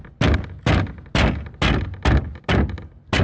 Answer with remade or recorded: recorded